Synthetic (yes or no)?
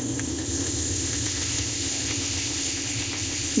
yes